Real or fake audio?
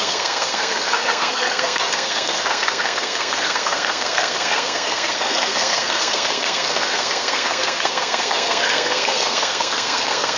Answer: fake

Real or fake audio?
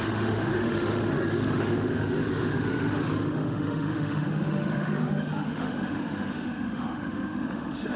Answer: fake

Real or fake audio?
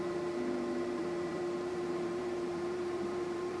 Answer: fake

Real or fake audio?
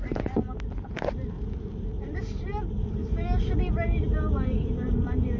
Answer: fake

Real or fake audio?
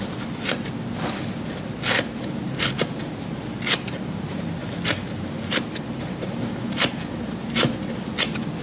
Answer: real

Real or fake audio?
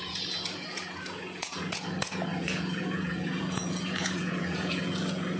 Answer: fake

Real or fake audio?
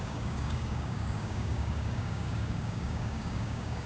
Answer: fake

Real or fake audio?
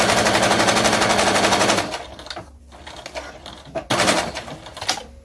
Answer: real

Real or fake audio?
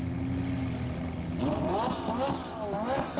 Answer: real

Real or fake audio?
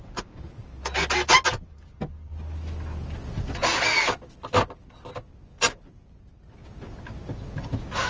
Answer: real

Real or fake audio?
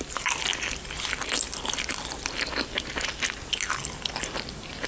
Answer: real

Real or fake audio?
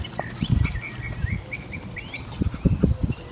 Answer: real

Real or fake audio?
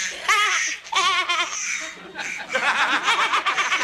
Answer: real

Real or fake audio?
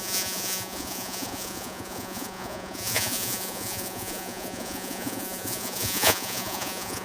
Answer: fake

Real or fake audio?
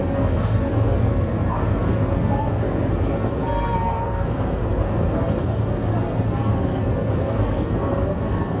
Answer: fake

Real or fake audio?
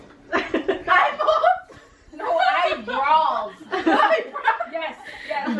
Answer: fake